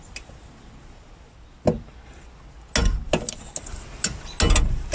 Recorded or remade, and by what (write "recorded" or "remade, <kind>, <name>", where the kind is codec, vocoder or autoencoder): recorded